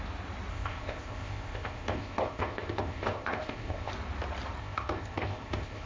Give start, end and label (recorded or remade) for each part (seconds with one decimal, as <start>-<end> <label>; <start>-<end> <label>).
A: 0.0-0.5 recorded; 0.5-3.9 remade; 3.9-4.6 recorded; 4.6-5.9 remade